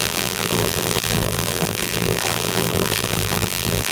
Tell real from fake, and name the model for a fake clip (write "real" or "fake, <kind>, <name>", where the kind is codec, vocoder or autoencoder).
fake, vocoder, BigVGAN v2